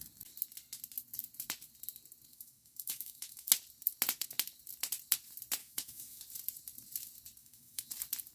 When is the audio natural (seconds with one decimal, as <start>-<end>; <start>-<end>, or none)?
0.0-2.3; 3.5-5.6; 6.2-7.4; 7.9-8.3